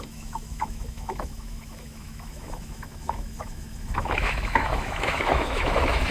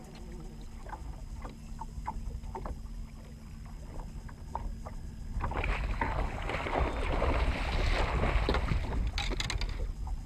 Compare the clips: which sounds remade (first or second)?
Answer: first